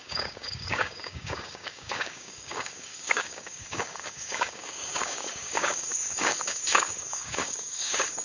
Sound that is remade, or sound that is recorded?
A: remade